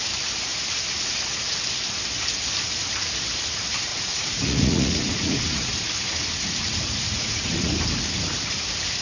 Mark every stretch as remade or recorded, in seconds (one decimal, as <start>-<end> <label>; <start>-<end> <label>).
0.0-3.9 recorded; 3.9-5.7 remade; 5.7-7.1 recorded; 7.1-7.7 remade; 7.7-9.0 recorded